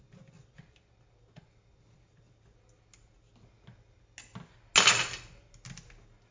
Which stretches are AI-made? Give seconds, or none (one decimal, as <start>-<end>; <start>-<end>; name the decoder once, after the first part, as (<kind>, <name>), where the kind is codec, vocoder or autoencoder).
none